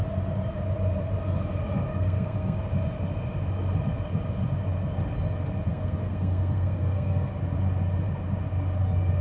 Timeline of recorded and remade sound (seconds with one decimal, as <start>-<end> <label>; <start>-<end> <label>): 0.0-1.9 recorded; 1.9-2.6 remade; 2.6-5.7 recorded; 5.7-7.3 remade; 7.3-9.2 recorded